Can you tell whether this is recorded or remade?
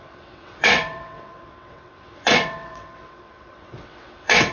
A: remade